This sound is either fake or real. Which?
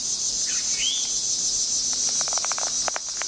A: real